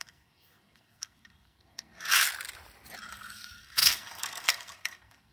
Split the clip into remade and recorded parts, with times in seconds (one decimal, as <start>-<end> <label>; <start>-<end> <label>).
0.0-2.3 remade; 2.3-3.1 recorded; 3.1-5.3 remade